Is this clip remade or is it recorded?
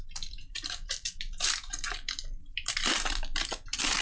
remade